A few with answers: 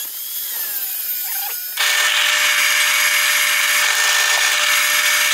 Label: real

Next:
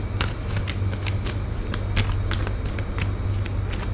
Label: real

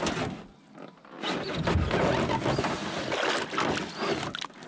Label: real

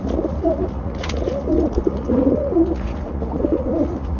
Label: fake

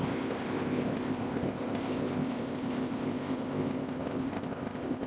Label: fake